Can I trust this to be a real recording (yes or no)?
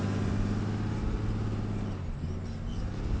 yes